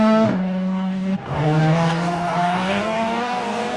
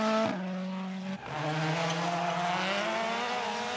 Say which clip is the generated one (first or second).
first